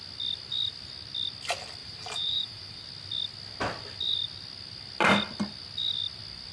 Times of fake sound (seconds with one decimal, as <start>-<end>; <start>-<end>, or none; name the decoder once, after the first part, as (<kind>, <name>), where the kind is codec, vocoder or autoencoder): 1.8-2.8 (vocoder, BigVGAN v2)